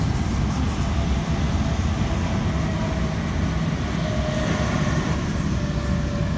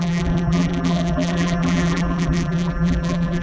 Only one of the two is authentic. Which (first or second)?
first